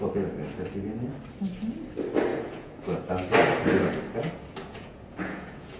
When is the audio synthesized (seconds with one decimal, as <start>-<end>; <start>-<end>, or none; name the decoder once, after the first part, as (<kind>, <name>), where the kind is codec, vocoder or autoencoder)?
2.3-3.1 (vocoder, Vocos); 4.6-5.8

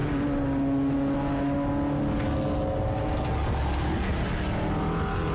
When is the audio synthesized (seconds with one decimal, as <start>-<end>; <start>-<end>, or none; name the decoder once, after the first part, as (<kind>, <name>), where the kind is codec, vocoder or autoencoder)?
none

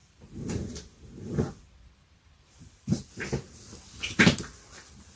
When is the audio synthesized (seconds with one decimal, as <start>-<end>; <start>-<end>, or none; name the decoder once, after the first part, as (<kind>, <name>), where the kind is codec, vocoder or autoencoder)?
0.0-3.1 (vocoder, BigVGAN v2)

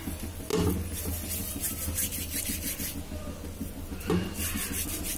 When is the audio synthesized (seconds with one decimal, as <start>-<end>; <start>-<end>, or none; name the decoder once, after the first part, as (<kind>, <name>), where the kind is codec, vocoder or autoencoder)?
none

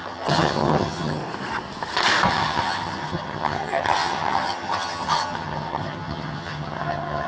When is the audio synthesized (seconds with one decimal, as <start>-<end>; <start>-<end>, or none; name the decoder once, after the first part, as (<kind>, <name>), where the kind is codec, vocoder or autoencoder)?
0.0-1.2 (vocoder, HiFi-GAN); 2.3-7.3

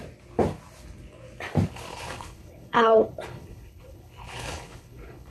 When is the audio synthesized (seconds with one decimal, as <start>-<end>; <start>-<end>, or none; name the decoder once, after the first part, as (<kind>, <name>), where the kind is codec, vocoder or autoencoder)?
1.9-5.3 (codec, HILCodec)

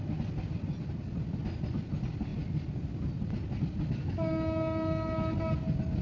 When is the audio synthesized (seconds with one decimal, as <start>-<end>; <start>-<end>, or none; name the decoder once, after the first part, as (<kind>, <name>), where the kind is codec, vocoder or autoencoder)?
none